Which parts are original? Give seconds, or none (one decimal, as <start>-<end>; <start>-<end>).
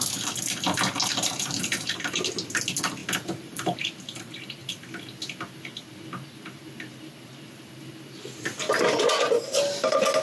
0.0-1.0; 1.9-3.0; 3.8-10.2